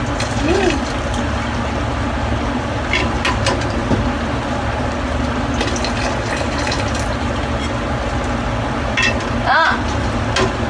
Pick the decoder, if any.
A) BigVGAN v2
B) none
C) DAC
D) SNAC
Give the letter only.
B